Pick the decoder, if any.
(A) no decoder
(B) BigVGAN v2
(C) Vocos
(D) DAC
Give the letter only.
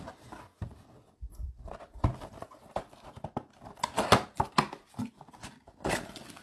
A